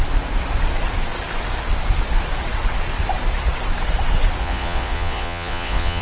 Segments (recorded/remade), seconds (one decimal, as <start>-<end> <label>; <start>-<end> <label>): 0.0-4.4 recorded; 4.4-6.0 remade